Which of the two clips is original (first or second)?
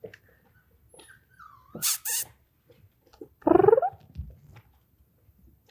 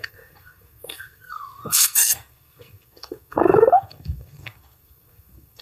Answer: first